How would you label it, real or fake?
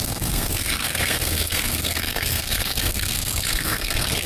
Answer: fake